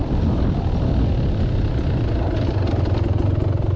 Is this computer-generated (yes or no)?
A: no